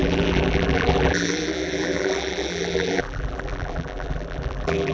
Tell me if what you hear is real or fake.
fake